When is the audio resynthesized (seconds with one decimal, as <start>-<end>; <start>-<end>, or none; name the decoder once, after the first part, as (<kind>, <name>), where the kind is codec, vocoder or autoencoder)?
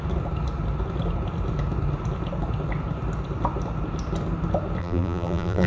4.8-5.7 (vocoder, BigVGAN v2)